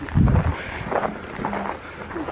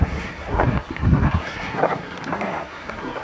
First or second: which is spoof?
second